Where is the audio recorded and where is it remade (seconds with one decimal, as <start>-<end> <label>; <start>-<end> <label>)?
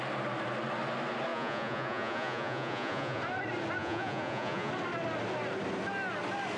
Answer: 0.0-1.3 recorded; 1.3-3.2 remade; 3.2-3.8 recorded; 3.8-4.7 remade; 4.7-6.6 recorded